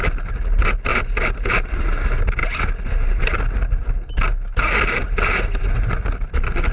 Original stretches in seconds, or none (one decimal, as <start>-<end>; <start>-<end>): 0.0-0.9; 1.5-6.7